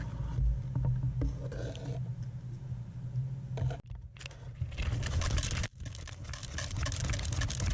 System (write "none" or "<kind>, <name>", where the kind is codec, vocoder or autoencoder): none